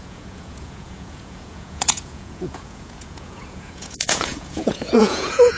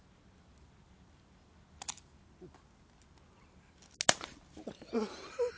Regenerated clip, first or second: first